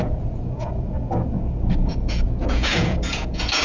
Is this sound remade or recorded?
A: remade